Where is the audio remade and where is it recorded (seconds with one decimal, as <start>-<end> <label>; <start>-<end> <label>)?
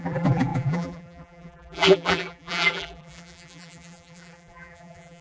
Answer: 0.0-5.2 remade